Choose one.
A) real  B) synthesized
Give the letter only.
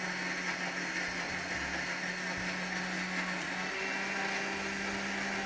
A